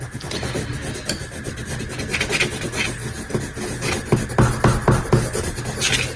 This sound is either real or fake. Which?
real